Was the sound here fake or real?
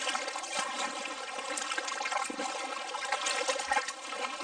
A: real